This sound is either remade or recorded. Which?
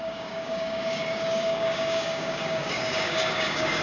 remade